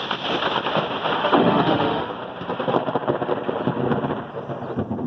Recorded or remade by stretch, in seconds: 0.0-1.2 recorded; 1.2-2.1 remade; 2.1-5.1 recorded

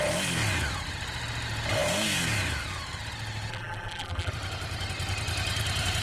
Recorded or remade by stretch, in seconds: 0.0-3.5 recorded; 3.5-4.3 remade; 4.3-6.0 recorded

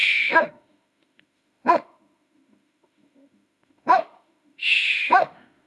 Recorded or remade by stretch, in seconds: 0.0-5.7 remade